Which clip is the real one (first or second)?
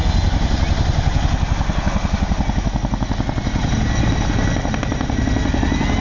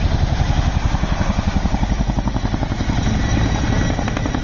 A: first